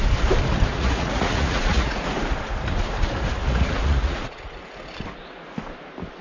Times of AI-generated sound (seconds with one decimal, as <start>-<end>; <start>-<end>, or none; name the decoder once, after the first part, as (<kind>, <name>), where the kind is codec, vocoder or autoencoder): 0.7-2.0 (vocoder, Vocos); 3.4-4.6

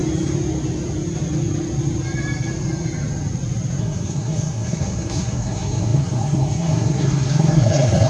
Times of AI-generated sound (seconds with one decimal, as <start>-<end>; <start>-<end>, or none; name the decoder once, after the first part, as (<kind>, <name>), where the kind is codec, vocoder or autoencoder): 3.8-8.1 (codec, SNAC)

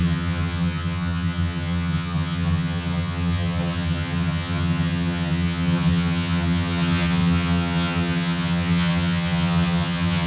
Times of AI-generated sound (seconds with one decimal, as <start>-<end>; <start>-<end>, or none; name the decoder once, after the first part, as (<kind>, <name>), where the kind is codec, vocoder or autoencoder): 0.0-10.3 (vocoder, HiFi-GAN)

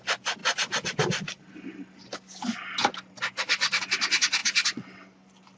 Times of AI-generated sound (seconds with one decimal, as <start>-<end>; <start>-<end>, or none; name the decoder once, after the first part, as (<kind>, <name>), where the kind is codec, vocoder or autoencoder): none

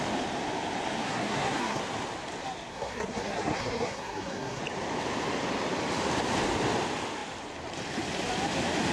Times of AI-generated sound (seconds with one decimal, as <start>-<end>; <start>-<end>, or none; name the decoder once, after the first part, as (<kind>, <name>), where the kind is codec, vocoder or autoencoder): 1.0-1.8 (codec, SNAC); 2.7-4.6